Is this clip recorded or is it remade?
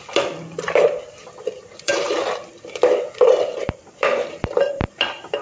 remade